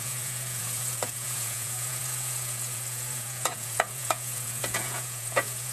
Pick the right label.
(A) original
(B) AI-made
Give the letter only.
B